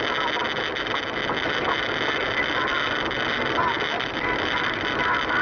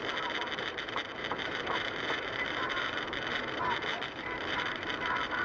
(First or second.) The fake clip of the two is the second